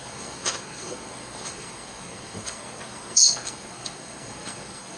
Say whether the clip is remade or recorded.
remade